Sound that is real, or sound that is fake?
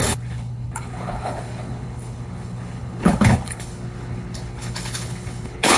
fake